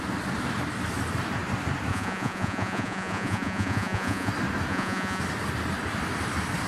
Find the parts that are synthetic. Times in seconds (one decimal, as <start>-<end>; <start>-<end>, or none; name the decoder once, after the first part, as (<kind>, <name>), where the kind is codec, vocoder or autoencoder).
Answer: 1.9-4.3 (vocoder, Vocos); 4.7-5.2